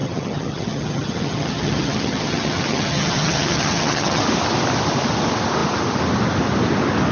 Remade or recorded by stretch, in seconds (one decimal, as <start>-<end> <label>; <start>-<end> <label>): 0.0-4.2 remade; 4.2-7.1 recorded